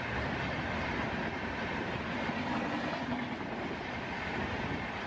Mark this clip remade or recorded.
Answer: recorded